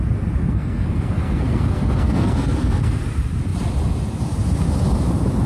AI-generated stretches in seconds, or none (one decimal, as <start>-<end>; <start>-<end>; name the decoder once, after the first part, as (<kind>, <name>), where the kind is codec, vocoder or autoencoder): 0.4-3.0 (codec, SNAC)